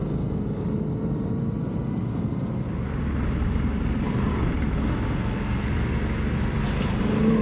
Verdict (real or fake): real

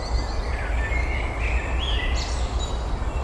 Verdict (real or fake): real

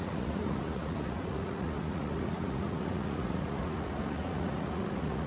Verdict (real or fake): fake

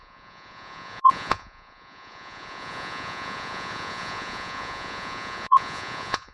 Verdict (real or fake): fake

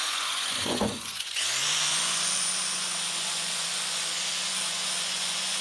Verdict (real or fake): fake